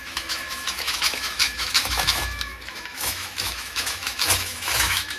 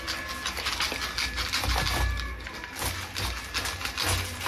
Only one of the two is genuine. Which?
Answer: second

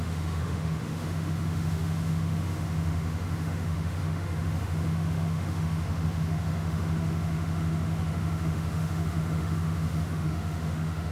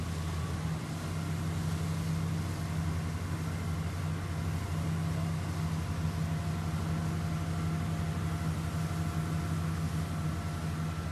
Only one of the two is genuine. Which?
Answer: second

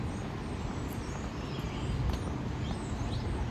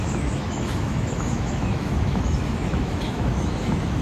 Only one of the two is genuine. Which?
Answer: first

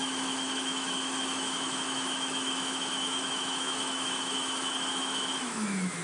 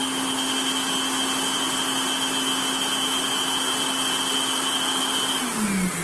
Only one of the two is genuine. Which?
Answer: second